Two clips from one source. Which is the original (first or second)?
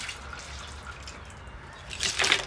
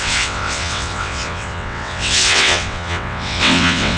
first